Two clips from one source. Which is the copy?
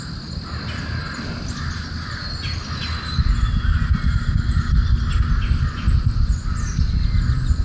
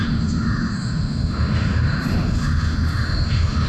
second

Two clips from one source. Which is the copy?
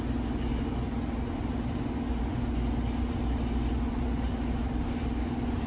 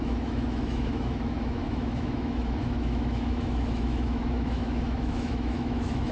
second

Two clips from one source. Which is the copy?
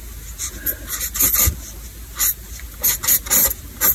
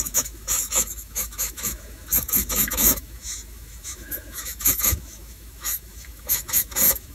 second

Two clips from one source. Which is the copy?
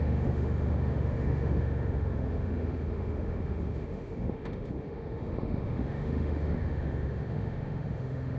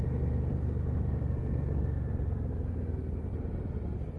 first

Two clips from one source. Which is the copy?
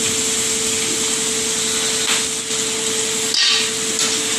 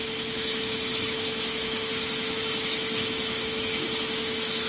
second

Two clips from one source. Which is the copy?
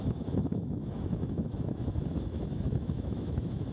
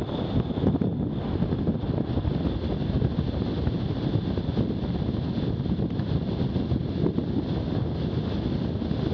first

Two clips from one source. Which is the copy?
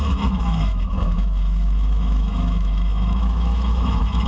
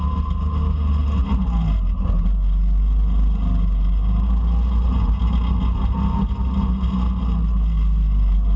first